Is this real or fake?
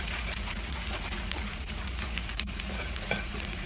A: fake